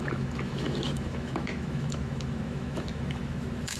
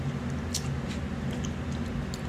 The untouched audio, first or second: second